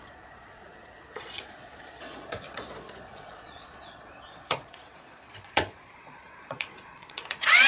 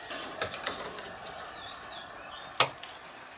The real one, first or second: second